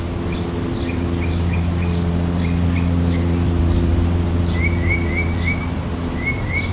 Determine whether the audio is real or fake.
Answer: real